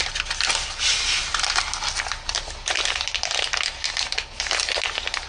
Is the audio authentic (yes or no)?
yes